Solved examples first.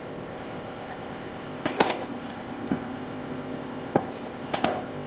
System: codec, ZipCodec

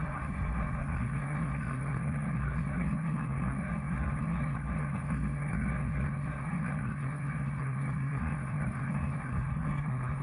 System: codec, SNAC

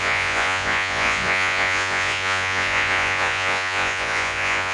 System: vocoder, Vocos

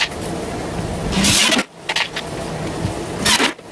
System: none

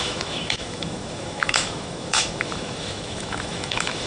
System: autoencoder, DAC-VAE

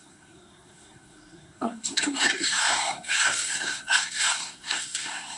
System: codec, SNAC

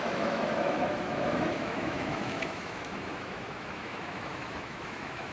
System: autoencoder, DAC-VAE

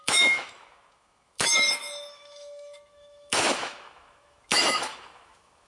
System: autoencoder, DAC-VAE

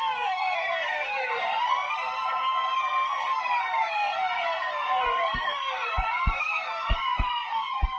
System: codec, SNAC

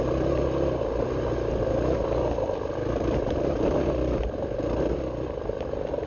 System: none